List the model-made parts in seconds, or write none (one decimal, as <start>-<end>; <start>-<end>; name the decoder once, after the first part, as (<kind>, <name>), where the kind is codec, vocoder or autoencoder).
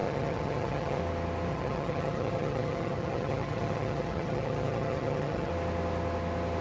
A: 0.0-1.0 (vocoder, HiFi-GAN); 1.5-5.5